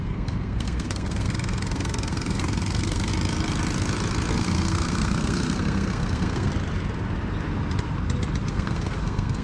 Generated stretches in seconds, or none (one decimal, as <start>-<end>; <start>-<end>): 0.0-3.1; 4.3-6.5; 8.5-9.4